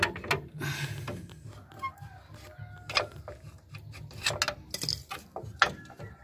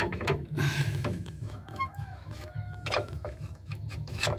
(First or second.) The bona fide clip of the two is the first